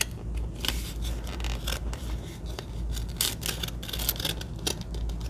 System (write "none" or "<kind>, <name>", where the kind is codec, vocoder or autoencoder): none